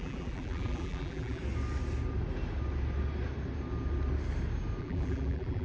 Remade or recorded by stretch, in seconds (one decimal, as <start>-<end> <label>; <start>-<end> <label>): 0.0-1.4 remade; 1.4-4.8 recorded; 4.8-5.6 remade